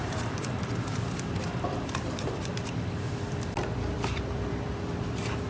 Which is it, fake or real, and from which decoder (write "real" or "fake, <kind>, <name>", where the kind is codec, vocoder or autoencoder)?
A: fake, vocoder, BigVGAN v2